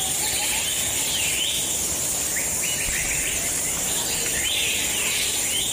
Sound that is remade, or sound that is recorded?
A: recorded